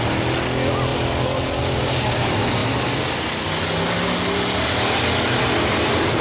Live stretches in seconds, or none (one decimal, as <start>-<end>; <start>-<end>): 0.0-6.2